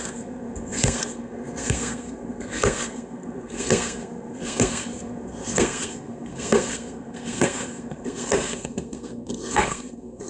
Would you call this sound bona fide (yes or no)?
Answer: no